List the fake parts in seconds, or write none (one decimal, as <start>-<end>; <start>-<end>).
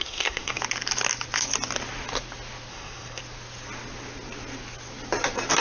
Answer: 0.0-0.6; 2.7-3.2